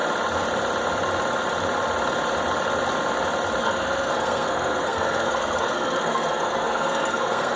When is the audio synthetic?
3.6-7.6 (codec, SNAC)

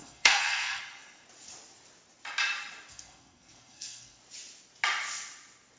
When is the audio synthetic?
0.0-0.8 (codec, SNAC); 2.9-4.2

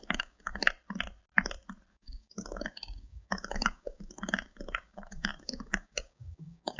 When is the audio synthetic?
0.0-0.6 (codec, DAC); 1.9-6.8

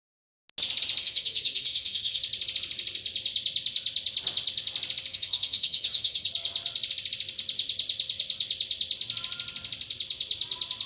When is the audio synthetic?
1.0-2.2 (codec, SNAC); 5.1-6.3

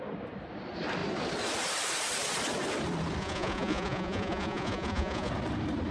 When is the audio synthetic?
3.2-5.3 (vocoder, Vocos)

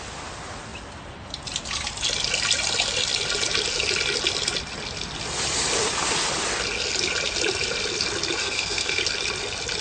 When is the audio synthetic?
8.4-9.0 (codec, SNAC)

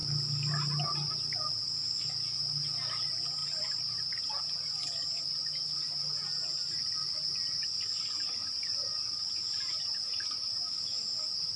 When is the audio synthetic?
3.4-4.4 (vocoder, BigVGAN v2)

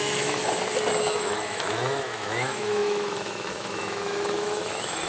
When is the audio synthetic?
0.0-0.4 (autoencoder, DAC-VAE); 1.0-5.1